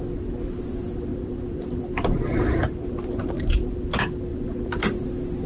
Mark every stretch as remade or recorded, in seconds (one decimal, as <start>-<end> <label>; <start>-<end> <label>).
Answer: 0.0-1.1 recorded; 1.1-3.3 remade; 3.3-4.3 recorded; 4.3-5.0 remade; 5.0-5.5 recorded